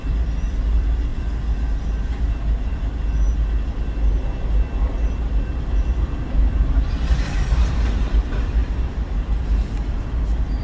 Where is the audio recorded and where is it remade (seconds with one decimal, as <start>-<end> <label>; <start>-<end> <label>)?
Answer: 0.0-1.1 remade; 1.1-5.7 recorded; 5.7-10.6 remade